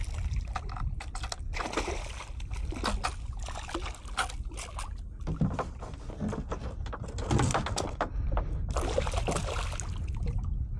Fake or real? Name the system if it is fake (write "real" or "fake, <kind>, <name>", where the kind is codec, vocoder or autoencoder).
real